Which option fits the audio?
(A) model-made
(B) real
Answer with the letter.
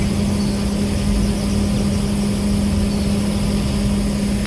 B